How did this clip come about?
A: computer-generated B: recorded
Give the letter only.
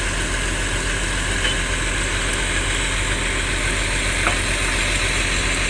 B